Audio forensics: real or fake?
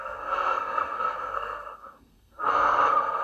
fake